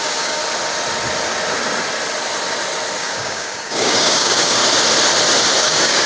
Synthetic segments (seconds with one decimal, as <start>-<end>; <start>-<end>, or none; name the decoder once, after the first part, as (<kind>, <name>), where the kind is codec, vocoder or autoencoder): 0.0-0.4 (codec, DAC); 3.0-4.6; 5.6-6.1